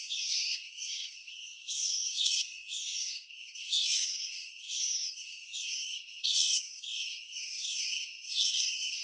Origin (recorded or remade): remade